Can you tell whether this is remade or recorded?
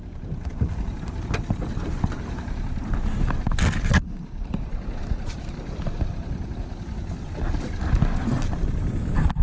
recorded